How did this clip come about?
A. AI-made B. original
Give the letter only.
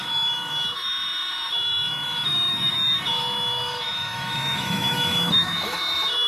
A